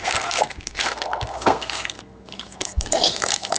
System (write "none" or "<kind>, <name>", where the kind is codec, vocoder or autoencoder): codec, SNAC